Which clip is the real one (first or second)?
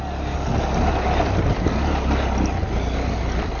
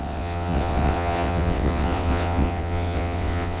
first